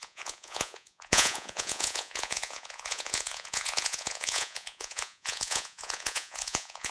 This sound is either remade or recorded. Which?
remade